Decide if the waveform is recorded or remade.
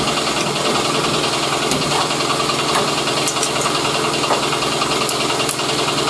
recorded